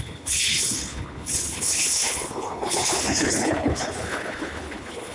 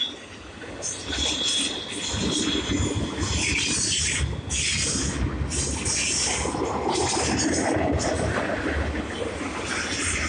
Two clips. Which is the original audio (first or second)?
second